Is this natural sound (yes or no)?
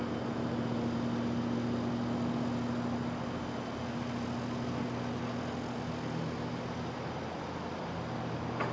yes